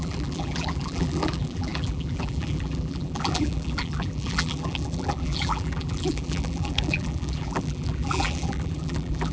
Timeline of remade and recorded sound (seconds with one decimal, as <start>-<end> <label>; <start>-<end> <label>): 0.0-9.3 remade